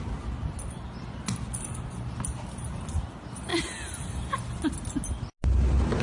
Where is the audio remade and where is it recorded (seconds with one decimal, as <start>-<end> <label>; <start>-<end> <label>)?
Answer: 0.0-6.0 recorded